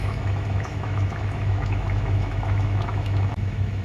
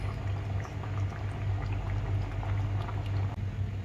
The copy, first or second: first